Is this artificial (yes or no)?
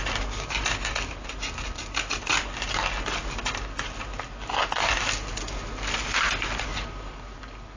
no